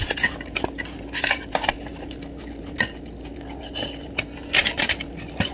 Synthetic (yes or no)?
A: no